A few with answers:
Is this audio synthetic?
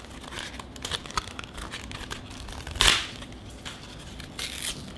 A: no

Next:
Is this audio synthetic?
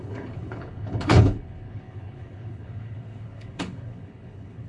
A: yes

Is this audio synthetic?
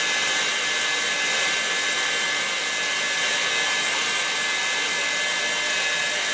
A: no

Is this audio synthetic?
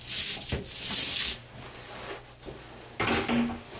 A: no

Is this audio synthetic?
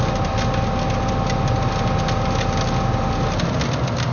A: no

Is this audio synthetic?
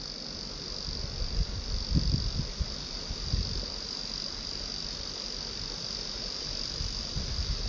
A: no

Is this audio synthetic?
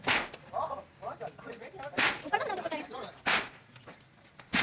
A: no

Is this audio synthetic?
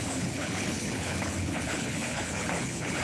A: yes